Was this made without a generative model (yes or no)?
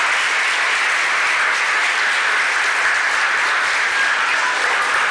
yes